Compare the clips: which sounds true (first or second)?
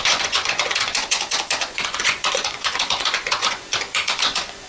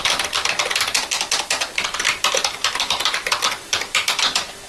second